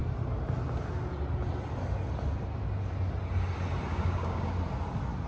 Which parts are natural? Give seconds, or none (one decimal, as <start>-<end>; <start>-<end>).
0.0-3.9; 4.5-5.3